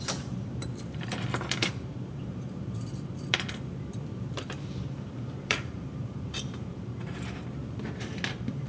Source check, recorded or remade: remade